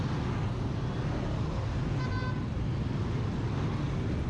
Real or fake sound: real